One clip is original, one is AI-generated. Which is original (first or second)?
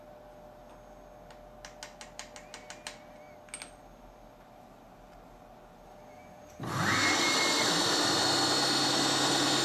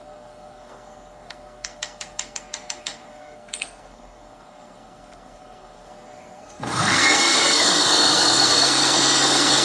first